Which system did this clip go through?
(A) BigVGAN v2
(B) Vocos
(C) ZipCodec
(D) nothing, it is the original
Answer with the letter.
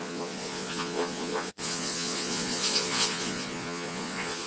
B